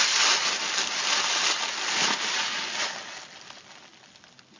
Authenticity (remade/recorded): recorded